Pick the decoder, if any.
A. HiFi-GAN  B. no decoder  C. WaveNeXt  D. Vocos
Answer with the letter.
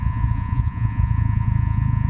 D